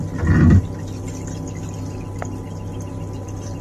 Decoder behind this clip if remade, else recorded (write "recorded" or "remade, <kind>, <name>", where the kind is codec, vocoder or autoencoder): recorded